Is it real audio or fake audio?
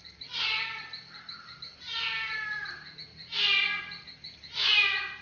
real